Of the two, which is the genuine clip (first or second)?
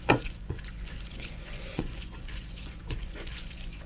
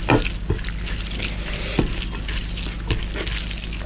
second